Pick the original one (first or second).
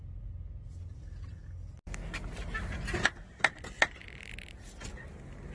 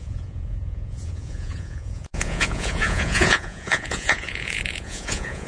first